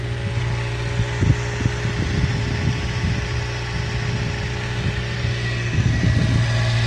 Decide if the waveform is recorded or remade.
recorded